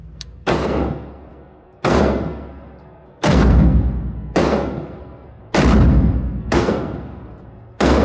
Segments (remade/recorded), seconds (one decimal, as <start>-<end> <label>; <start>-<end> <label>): 0.0-5.4 remade; 5.4-5.9 recorded; 5.9-8.0 remade